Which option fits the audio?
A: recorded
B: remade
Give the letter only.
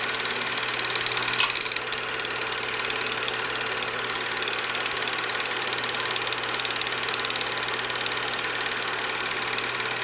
A